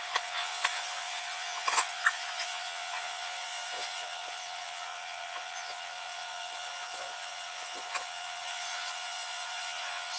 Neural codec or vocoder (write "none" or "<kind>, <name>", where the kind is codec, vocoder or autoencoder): vocoder, Vocos